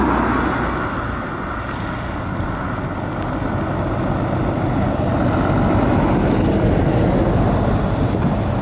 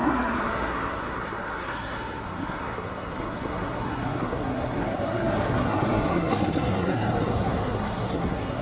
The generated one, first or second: second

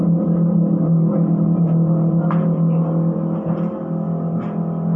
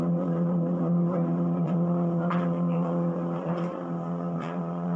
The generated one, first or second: second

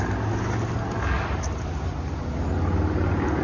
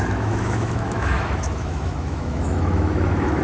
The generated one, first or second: second